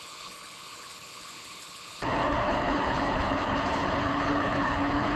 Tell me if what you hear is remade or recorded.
remade